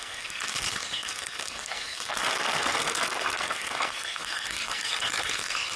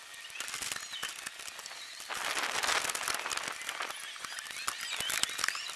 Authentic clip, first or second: second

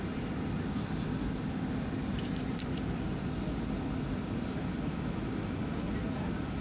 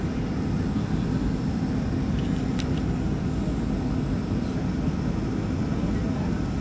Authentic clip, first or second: second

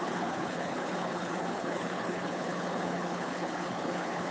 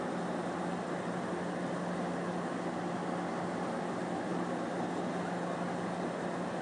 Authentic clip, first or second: second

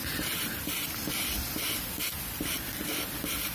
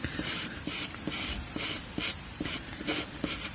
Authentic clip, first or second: first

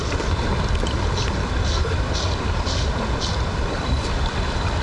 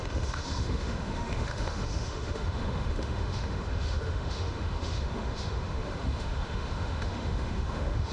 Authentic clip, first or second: first